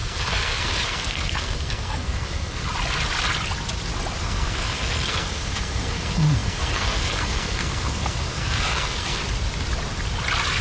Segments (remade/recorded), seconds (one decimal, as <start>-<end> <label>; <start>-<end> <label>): 0.0-2.6 remade; 2.6-4.2 recorded; 4.2-9.2 remade; 9.2-10.6 recorded